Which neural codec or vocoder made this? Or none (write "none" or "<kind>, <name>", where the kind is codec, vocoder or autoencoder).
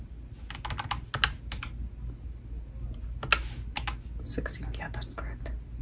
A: none